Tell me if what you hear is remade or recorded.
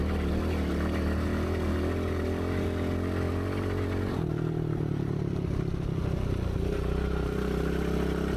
recorded